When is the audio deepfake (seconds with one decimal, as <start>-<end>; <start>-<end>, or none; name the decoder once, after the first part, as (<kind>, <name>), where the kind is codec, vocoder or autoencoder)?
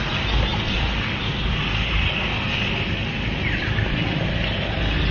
none